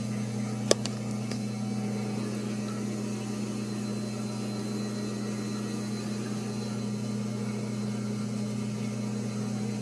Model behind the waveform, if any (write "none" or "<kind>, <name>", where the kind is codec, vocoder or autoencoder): none